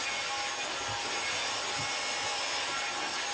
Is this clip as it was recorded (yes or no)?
yes